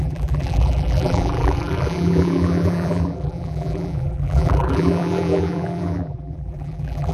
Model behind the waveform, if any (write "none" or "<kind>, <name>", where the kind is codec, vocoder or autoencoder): vocoder, BigVGAN v2